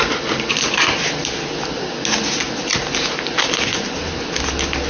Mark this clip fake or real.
real